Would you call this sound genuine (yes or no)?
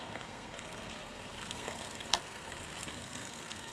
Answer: no